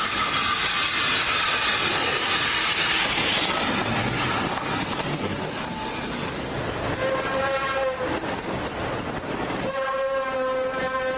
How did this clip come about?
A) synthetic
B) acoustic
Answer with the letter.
B